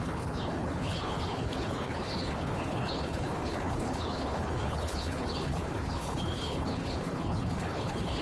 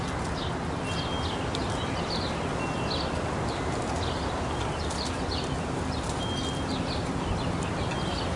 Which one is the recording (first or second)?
second